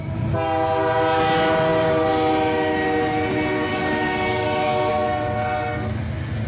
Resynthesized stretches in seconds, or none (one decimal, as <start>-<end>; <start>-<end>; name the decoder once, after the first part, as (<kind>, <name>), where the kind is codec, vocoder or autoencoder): 3.7-4.9 (codec, DAC)